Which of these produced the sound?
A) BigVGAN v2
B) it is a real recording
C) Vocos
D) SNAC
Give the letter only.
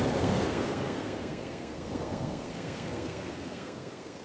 D